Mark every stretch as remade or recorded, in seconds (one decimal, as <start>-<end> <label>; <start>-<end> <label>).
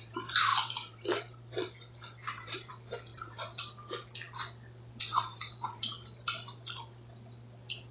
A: 0.0-0.5 recorded; 0.5-2.7 remade; 2.7-7.9 recorded